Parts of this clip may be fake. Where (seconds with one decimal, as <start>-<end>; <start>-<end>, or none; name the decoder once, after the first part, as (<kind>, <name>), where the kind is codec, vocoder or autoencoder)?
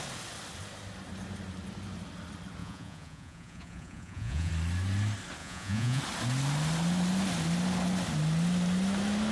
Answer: 2.6-4.5 (vocoder, Vocos); 5.4-6.0